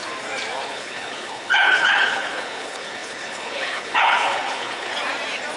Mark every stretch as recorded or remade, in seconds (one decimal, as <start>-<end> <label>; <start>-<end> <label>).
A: 0.0-0.6 recorded; 0.6-4.9 remade; 4.9-5.6 recorded